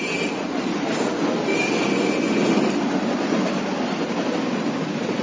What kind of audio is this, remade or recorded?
recorded